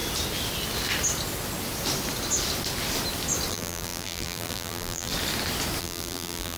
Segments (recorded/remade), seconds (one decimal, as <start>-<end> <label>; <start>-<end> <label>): 0.0-3.5 recorded; 3.5-5.1 remade; 5.1-5.8 recorded; 5.8-6.6 remade